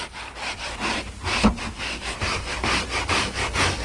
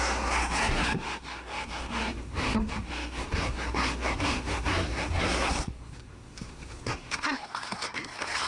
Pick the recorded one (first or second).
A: first